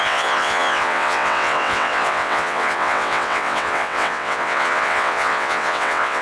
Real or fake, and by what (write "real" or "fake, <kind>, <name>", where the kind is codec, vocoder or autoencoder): fake, vocoder, WaveNeXt